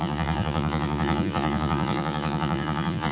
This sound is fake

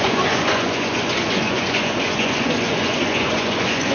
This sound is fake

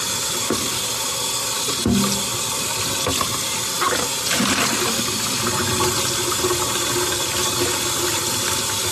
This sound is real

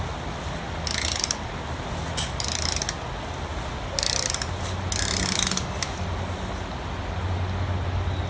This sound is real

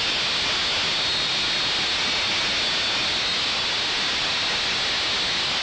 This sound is real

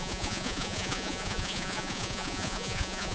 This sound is fake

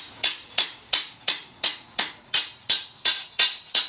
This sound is fake